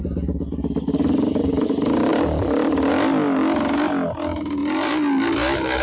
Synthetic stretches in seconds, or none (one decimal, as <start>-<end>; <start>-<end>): 2.1-2.9